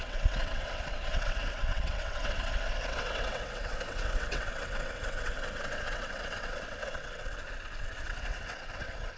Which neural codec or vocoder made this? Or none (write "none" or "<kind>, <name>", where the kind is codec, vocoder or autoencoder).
vocoder, WaveNeXt